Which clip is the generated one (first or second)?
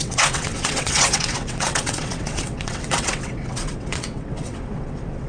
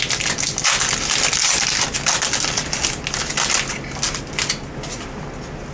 first